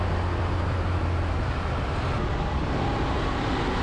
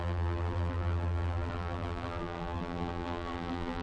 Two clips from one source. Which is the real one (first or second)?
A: first